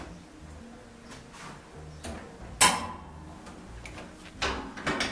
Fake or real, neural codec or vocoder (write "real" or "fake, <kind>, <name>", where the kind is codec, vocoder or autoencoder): real